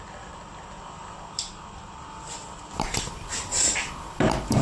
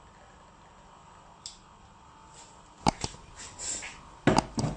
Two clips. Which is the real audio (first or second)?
second